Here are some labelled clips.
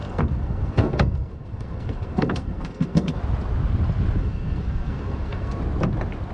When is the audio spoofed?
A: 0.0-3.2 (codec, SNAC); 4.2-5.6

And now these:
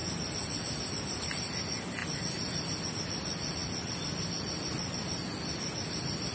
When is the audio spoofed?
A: none

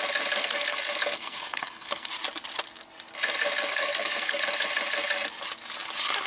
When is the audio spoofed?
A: 0.4-2.1 (codec, SNAC); 3.7-4.4

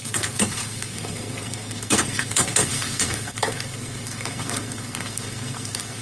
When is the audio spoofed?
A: 0.0-6.0 (codec, SNAC)

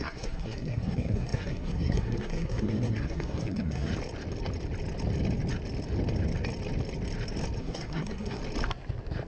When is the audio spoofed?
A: 0.0-3.9 (codec, SNAC); 7.6-8.4

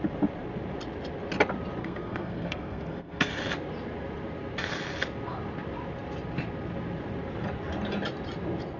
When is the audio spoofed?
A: 1.8-3.4 (codec, SNAC)

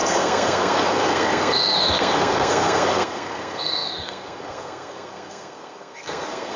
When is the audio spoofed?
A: 0.0-6.6 (codec, SNAC)